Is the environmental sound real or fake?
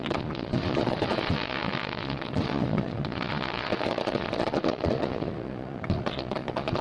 fake